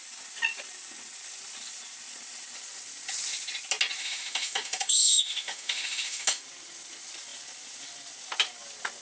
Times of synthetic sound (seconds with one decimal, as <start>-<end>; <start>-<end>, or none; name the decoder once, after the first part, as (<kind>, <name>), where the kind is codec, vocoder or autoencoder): 4.0-6.4 (autoencoder, DAC-VAE)